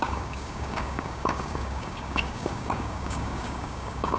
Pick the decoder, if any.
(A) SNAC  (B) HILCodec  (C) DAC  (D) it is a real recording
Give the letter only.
C